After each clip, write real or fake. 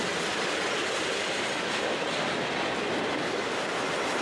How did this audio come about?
real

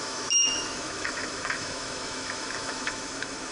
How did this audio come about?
fake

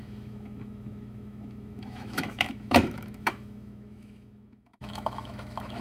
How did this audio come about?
fake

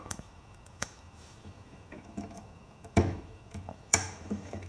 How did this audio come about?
fake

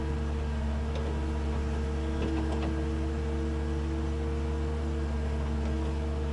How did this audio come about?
real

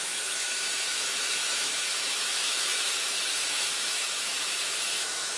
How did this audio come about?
fake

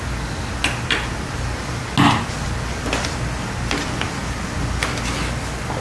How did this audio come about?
real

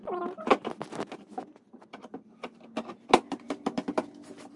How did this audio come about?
real